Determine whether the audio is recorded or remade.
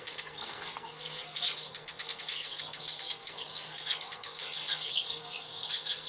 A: remade